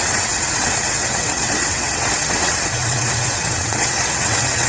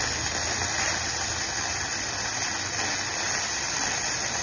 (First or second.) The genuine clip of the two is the second